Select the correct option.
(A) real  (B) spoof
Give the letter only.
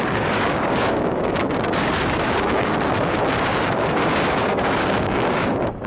B